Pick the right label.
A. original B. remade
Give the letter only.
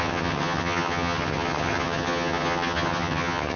B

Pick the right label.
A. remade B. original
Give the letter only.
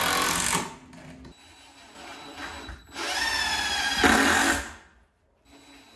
B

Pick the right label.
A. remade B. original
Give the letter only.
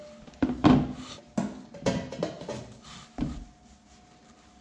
B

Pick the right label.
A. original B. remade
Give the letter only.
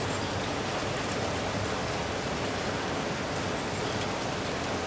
A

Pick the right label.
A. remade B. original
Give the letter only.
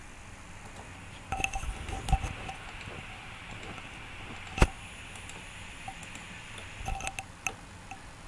B